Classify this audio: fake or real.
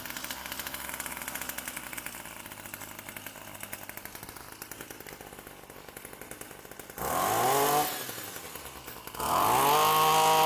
real